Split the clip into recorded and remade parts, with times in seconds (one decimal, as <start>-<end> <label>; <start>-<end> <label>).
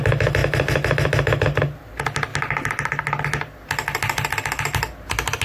0.0-5.4 recorded